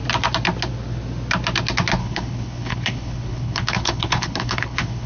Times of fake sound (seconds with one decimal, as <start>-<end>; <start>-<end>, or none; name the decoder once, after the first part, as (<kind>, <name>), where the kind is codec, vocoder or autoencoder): 2.0-5.1 (codec, HILCodec)